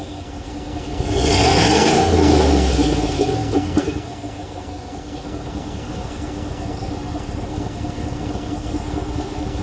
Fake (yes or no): yes